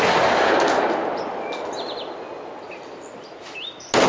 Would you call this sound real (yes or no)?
yes